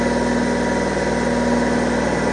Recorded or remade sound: recorded